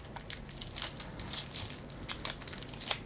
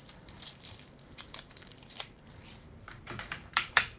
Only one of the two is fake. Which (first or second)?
second